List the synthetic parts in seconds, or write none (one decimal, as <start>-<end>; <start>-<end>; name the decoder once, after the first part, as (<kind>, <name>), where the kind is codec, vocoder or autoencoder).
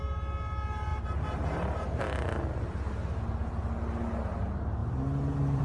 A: 0.9-2.0 (vocoder, BigVGAN v2); 4.8-5.6